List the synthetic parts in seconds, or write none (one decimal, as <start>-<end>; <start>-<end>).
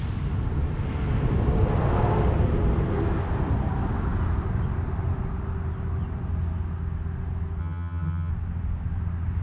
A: 7.6-8.3